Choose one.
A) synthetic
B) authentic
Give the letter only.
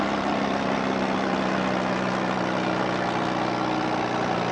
B